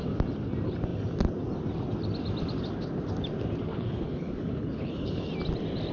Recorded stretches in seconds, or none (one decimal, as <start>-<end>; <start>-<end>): 0.0-3.7; 5.3-5.9